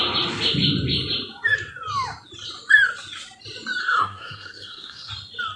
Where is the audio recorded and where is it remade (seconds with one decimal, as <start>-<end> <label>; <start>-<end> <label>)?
0.0-3.8 recorded; 3.8-5.1 remade; 5.1-5.6 recorded